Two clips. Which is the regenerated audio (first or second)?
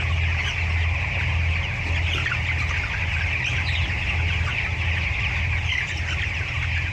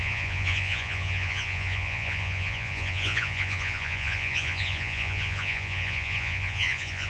second